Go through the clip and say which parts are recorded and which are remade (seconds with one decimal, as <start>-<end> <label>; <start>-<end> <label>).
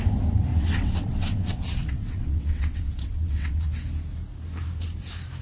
0.0-0.5 recorded; 0.5-3.7 remade; 3.7-5.4 recorded